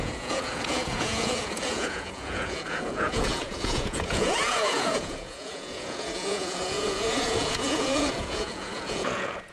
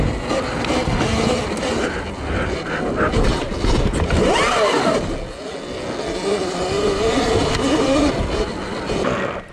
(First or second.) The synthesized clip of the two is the first